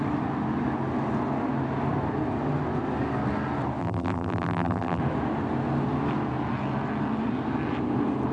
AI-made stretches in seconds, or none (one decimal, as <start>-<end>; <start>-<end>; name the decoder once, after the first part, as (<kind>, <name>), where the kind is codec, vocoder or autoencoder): 3.8-5.0 (vocoder, BigVGAN v2)